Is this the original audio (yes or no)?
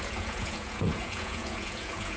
no